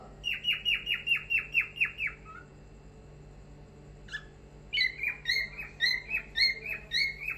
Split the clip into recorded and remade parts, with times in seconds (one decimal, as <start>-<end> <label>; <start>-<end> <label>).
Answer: 0.0-7.4 recorded